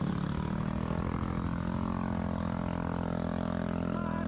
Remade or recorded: recorded